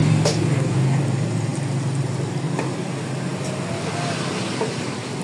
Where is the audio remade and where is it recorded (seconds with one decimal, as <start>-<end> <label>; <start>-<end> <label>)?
0.0-1.0 remade; 1.0-5.2 recorded